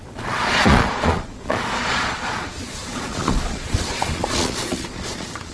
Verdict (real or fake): fake